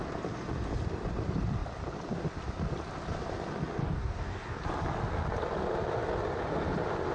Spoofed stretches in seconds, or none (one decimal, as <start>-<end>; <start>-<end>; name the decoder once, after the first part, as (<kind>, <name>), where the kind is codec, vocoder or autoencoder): 3.8-4.6 (codec, DAC)